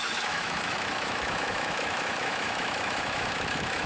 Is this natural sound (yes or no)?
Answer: no